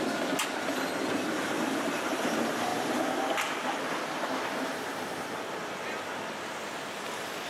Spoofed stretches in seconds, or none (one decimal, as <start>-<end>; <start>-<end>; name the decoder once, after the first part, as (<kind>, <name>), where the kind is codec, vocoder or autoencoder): none